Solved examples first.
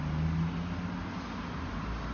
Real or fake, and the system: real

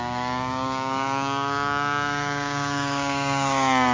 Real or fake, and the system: fake, codec, DAC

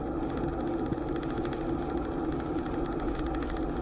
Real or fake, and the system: real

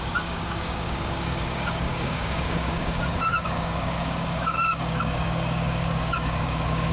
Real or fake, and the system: fake, codec, DAC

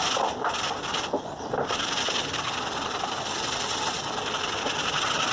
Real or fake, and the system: real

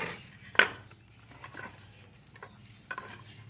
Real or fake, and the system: real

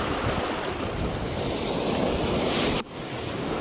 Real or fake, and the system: real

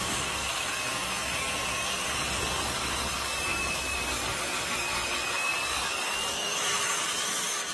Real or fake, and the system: fake, codec, DAC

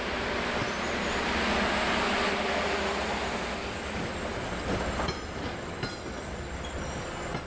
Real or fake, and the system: real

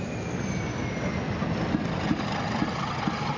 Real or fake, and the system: real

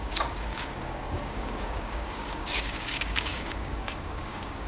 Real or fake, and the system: fake, codec, DAC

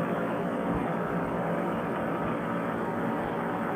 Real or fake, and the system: fake, codec, DAC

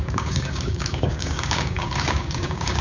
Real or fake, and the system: fake, codec, DAC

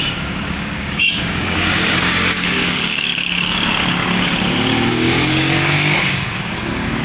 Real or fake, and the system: fake, codec, DAC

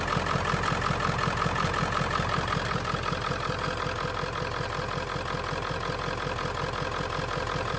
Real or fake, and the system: real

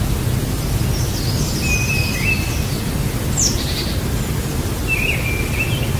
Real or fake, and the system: real